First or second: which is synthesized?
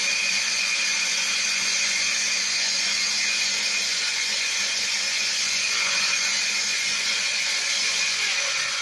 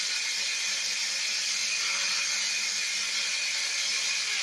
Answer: first